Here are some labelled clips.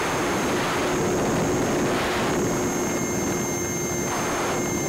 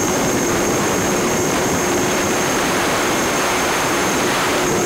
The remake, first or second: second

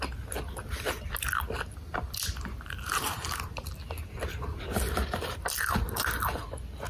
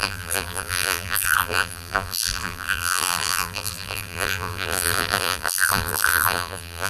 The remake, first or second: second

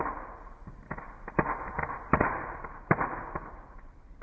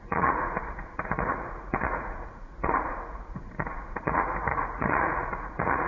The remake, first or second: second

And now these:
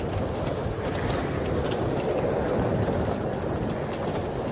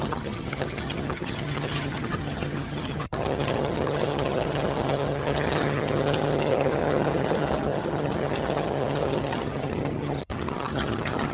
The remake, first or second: second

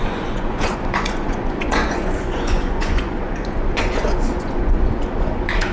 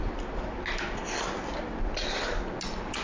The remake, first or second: first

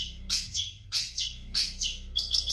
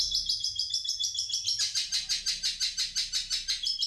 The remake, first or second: first